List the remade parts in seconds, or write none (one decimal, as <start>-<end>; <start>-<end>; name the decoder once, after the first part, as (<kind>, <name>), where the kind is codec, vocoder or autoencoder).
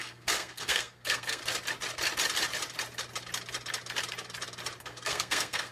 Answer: 0.0-1.4 (codec, SNAC); 4.8-5.7